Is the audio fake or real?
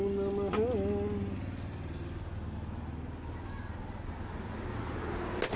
real